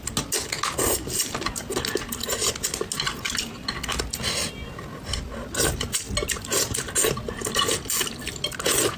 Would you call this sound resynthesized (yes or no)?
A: no